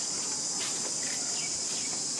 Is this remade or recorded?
recorded